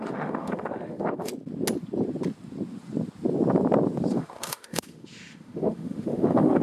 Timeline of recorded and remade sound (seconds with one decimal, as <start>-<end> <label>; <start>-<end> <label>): 0.0-1.3 remade; 1.3-4.1 recorded; 4.1-6.6 remade